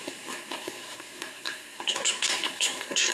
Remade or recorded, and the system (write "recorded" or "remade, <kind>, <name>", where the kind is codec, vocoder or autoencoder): remade, codec, SNAC